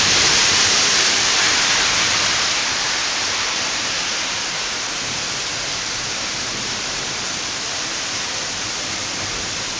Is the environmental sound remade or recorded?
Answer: remade